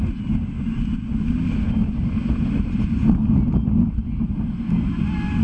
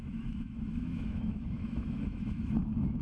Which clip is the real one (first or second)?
first